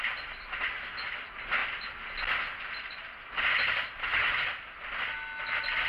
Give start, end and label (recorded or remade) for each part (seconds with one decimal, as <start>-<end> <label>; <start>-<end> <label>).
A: 0.0-4.1 recorded; 4.1-4.7 remade; 4.7-5.9 recorded